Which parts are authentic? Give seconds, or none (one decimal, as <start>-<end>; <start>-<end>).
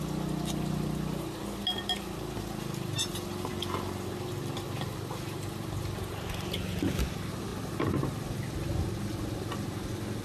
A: 0.0-10.2